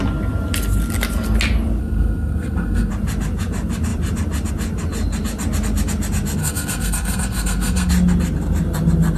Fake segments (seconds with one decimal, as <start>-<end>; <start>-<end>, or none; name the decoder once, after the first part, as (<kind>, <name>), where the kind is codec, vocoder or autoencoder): 1.8-2.9 (codec, SNAC); 6.4-7.9

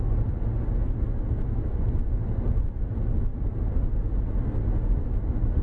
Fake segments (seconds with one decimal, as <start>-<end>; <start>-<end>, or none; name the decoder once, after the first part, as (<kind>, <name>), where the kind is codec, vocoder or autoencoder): none